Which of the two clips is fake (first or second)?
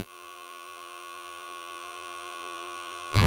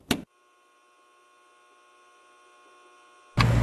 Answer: first